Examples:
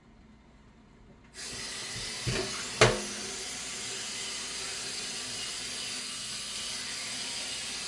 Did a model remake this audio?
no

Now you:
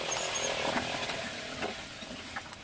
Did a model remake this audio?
yes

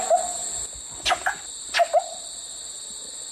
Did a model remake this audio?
no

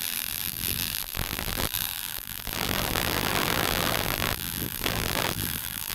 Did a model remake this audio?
yes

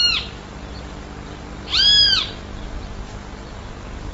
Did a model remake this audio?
no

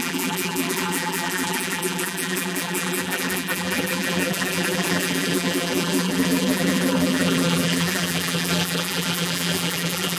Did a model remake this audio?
yes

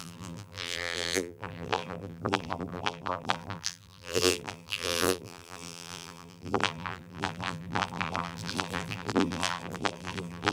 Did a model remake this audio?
yes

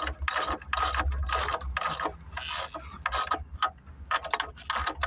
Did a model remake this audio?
no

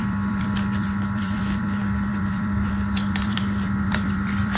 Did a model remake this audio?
yes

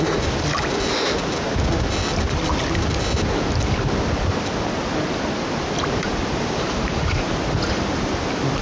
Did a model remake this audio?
no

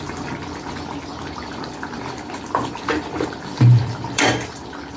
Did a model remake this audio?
yes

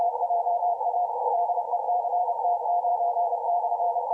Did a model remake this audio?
yes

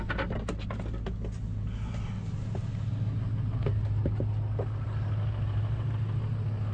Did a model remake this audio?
no